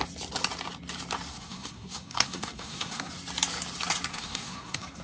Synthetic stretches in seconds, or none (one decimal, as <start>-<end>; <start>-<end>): 1.3-3.1; 4.1-5.0